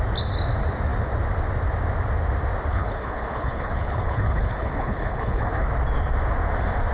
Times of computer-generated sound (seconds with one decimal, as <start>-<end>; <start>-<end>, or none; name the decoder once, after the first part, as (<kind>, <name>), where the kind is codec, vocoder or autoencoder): 2.7-5.7 (codec, HILCodec)